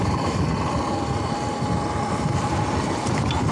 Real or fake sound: real